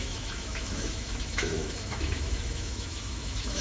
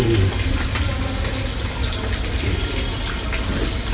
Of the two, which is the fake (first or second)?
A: first